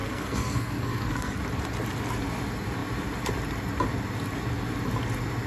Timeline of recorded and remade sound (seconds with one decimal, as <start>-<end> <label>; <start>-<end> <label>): 0.0-1.4 remade; 1.4-5.5 recorded